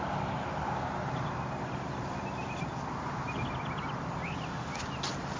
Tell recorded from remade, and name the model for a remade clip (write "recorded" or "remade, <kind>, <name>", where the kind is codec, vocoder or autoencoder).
recorded